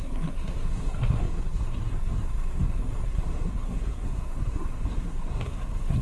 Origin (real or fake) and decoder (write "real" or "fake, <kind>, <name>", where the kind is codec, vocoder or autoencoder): fake, codec, SNAC